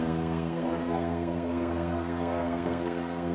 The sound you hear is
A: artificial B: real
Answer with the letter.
A